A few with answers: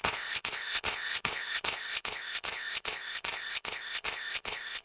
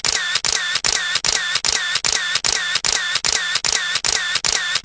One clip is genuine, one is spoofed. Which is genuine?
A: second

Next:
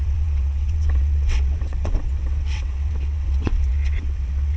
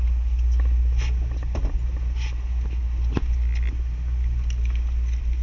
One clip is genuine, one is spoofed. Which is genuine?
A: second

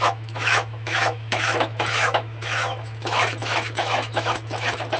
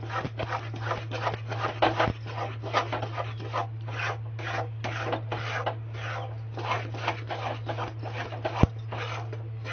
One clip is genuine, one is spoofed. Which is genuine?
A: second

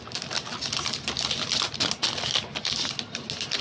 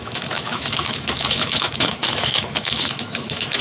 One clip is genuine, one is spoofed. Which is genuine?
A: first